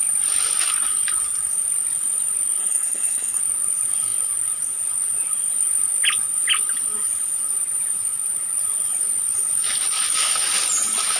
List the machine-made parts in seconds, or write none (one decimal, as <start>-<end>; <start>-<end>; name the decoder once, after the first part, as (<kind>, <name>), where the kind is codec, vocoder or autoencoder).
2.6-3.4 (codec, SNAC)

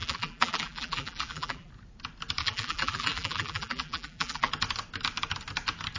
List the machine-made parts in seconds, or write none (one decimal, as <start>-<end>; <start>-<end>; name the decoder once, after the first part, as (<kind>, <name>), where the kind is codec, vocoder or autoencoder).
0.0-1.7 (vocoder, BigVGAN v2); 2.4-4.5

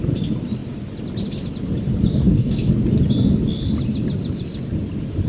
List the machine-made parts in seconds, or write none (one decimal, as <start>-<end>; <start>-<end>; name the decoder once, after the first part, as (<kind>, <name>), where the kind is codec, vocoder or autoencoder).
2.1-2.7 (codec, DAC)